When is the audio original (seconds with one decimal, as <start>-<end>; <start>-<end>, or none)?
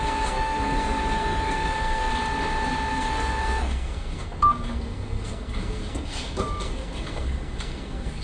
2.1-2.9